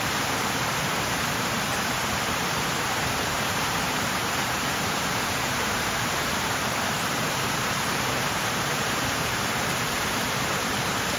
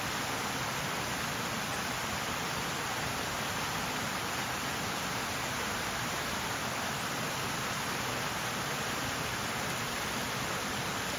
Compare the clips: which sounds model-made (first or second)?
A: first